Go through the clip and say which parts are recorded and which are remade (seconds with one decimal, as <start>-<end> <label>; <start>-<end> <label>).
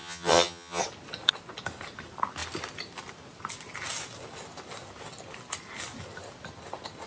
0.0-0.8 remade; 0.8-7.1 recorded